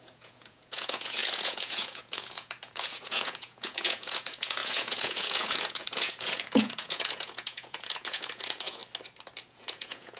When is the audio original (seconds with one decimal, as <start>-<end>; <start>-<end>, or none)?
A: 8.8-9.4